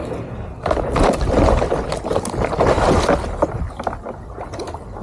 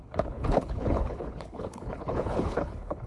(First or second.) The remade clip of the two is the second